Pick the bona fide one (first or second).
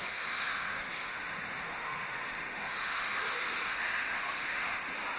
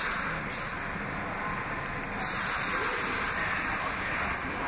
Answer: second